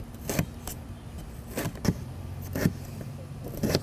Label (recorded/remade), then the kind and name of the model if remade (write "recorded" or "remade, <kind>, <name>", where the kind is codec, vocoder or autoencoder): recorded